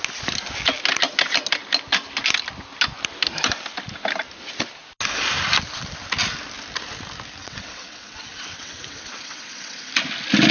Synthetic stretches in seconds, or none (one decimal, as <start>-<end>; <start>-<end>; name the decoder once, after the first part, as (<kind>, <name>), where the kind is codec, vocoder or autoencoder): 7.4-9.9 (vocoder, WaveNeXt)